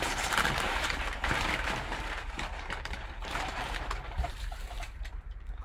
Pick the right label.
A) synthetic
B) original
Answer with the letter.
A